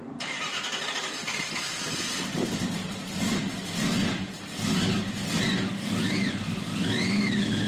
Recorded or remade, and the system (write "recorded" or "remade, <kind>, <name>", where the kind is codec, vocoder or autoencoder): recorded